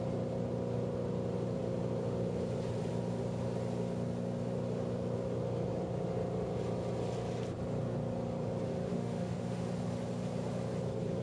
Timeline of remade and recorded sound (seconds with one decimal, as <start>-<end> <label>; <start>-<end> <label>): 0.0-8.9 recorded; 8.9-9.6 remade; 9.6-11.2 recorded